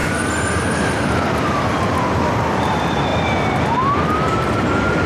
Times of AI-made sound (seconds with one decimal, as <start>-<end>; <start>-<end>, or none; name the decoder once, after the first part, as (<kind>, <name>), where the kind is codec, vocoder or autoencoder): none